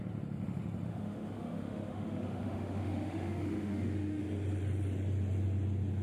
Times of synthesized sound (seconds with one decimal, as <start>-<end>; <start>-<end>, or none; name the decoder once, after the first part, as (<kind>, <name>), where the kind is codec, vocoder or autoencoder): 0.9-4.2 (autoencoder, DAC-VAE)